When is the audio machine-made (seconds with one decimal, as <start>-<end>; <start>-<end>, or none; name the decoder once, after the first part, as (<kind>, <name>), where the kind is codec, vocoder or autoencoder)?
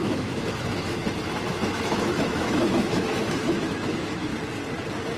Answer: 0.0-1.0 (autoencoder, DAC-VAE); 1.5-4.3